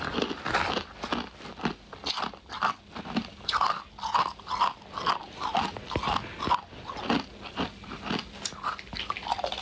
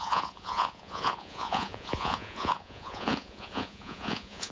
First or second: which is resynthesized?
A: second